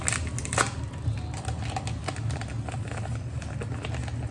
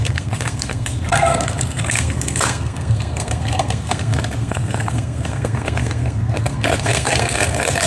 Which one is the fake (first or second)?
second